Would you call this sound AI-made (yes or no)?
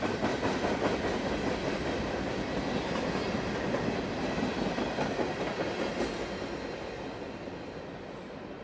no